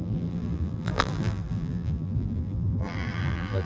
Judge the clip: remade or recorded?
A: remade